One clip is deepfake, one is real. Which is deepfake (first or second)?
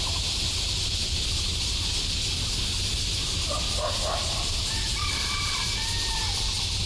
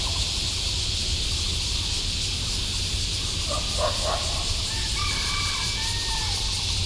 first